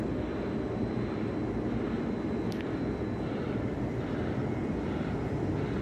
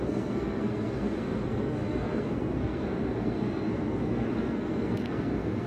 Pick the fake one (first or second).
second